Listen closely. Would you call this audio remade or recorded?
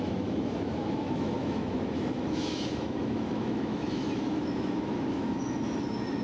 remade